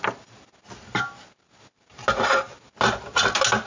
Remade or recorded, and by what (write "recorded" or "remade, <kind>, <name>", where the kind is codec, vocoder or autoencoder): recorded